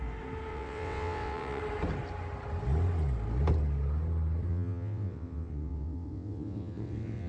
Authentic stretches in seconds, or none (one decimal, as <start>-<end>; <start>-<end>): 0.0-0.5; 1.6-4.5